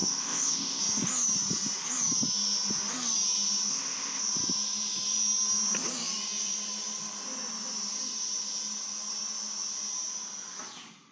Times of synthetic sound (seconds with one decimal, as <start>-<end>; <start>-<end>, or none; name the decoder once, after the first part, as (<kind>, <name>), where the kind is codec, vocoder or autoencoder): 0.0-0.8 (codec, ZipCodec); 3.7-4.2